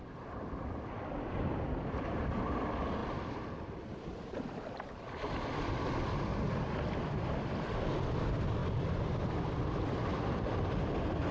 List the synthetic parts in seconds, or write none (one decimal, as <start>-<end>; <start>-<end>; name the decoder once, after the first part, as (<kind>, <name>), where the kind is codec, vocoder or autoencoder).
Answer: none